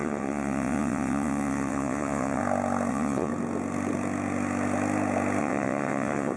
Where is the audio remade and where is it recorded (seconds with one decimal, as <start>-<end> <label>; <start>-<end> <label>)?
0.0-2.4 remade; 2.4-2.9 recorded; 2.9-3.3 remade; 3.3-5.4 recorded; 5.4-6.4 remade